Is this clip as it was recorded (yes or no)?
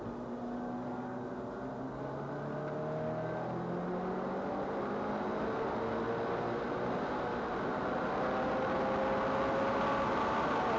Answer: yes